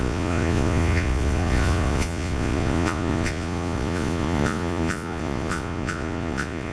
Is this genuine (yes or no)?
no